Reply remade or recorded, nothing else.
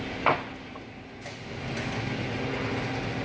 recorded